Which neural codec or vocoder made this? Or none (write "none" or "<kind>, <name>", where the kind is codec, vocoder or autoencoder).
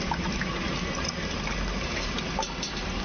none